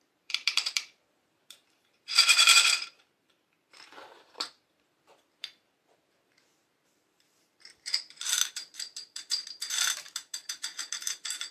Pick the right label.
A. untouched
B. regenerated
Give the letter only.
B